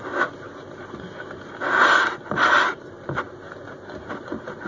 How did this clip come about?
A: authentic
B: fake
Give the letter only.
A